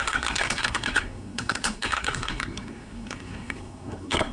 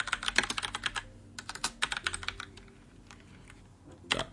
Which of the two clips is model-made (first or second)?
first